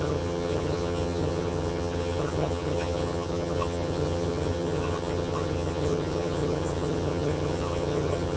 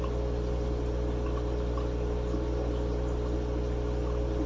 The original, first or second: second